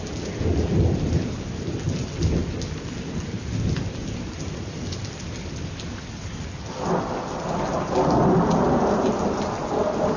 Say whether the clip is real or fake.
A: real